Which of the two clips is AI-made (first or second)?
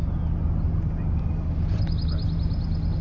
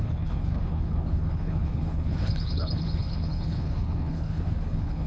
second